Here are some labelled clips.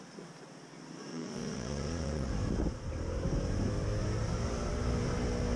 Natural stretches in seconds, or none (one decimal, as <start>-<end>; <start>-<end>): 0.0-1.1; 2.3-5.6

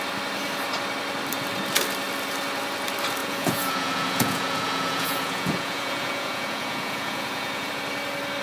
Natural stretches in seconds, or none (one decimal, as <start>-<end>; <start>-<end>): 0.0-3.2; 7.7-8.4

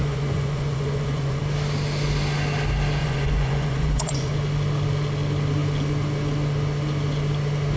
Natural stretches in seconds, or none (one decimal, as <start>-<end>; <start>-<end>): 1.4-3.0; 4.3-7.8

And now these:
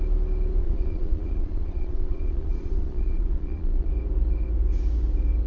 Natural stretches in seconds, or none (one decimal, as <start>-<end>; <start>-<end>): 0.0-0.6; 3.9-5.5

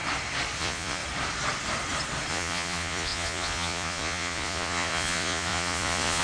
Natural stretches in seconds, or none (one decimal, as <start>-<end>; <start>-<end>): 0.0-0.6; 1.0-2.3